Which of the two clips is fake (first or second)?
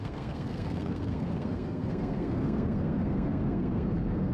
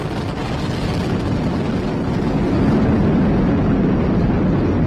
first